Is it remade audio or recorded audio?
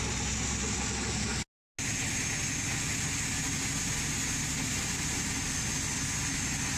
recorded